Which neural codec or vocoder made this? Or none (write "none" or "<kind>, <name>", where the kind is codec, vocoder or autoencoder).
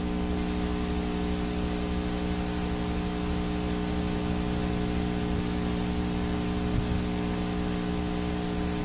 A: none